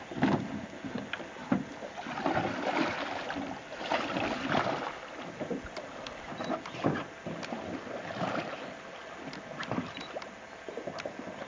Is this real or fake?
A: real